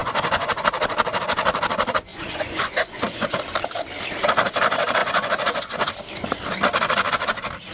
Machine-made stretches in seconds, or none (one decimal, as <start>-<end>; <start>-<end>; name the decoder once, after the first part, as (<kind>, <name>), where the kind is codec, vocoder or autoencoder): 0.0-0.6 (vocoder, Vocos); 2.1-3.4; 5.0-5.9